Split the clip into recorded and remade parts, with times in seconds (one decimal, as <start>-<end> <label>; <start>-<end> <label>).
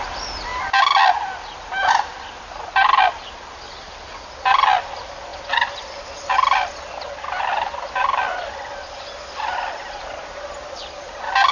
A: 0.0-11.5 recorded